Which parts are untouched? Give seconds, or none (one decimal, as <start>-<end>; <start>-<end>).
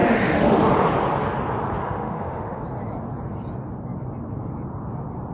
0.7-1.8; 2.6-5.3